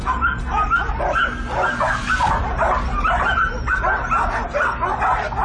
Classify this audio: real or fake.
real